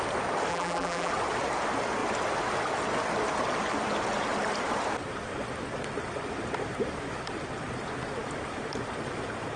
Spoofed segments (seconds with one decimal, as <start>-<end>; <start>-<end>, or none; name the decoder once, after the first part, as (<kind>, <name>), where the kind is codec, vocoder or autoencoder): 0.5-1.1 (vocoder, BigVGAN v2)